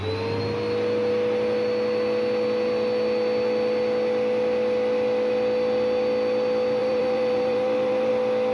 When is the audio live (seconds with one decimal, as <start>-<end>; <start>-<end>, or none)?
0.0-6.8; 8.1-8.5